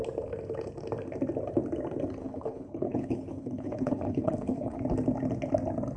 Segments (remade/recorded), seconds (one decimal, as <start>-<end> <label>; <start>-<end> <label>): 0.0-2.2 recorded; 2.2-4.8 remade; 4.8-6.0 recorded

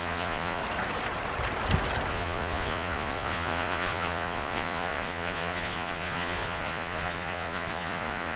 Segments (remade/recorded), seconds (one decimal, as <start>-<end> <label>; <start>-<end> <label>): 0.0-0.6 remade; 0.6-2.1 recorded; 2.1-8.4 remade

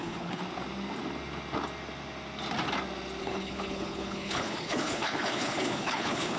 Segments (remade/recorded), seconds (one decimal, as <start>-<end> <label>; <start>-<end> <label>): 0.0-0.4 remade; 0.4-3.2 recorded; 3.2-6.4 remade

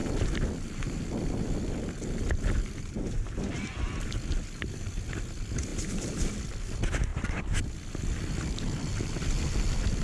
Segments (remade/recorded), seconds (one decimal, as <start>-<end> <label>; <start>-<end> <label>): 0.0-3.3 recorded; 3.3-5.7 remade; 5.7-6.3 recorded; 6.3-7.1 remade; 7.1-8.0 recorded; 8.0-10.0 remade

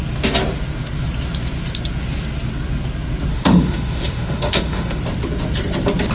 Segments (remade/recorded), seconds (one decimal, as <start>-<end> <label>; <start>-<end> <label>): 0.0-3.3 recorded; 3.3-5.0 remade; 5.0-6.1 recorded

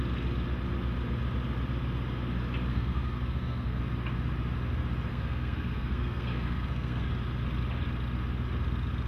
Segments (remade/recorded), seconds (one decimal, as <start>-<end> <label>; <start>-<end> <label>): 0.0-2.7 recorded; 2.7-3.8 remade; 3.8-5.1 recorded; 5.1-7.1 remade; 7.1-9.1 recorded

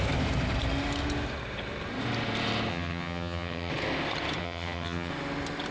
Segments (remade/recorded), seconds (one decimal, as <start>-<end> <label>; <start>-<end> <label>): 0.0-2.7 recorded; 2.7-3.7 remade; 3.7-4.4 recorded; 4.4-5.1 remade; 5.1-5.7 recorded

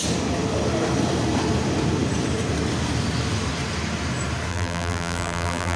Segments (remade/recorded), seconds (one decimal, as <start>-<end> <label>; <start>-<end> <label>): 0.0-4.5 recorded; 4.5-5.8 remade